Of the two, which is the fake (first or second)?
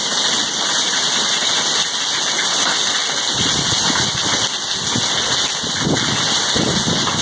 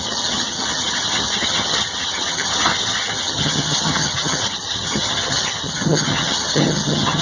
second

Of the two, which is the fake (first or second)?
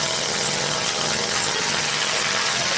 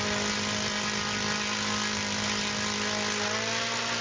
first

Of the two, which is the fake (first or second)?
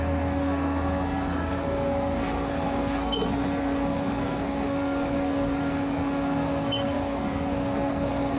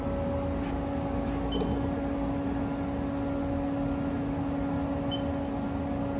first